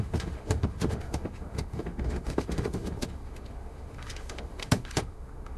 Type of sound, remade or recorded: remade